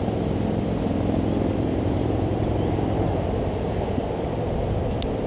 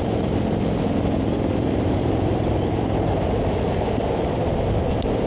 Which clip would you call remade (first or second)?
second